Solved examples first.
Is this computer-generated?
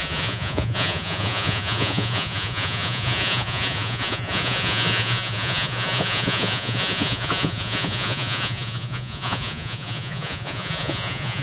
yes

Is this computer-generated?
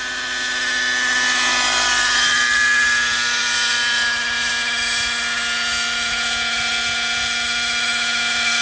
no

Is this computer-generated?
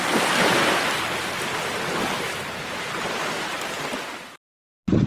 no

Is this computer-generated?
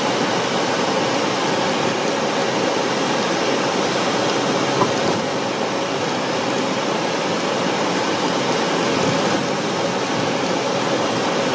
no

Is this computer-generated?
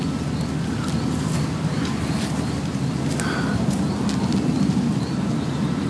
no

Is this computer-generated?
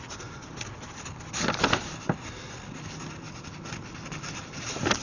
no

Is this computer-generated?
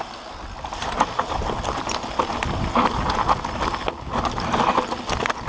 no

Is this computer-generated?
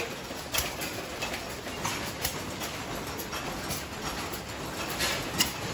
no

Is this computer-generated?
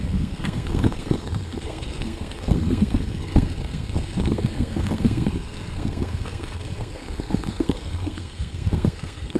yes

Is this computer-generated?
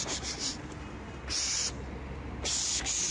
no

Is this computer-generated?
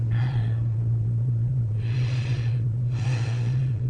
yes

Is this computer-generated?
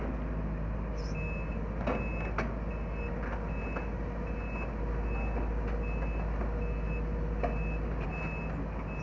no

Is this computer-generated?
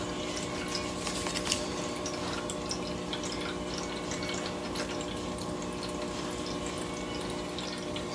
no